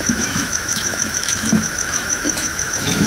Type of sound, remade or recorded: remade